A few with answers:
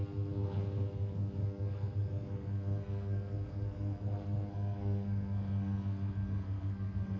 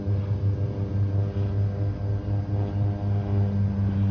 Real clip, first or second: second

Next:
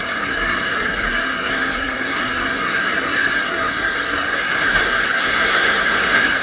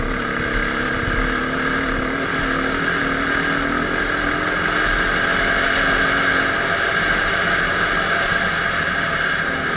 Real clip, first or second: second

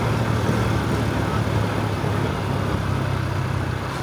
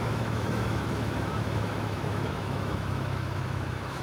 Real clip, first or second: first